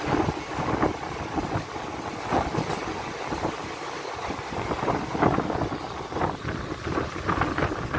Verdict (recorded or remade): recorded